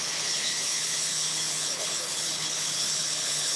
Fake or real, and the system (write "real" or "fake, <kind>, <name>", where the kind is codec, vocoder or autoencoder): fake, codec, HILCodec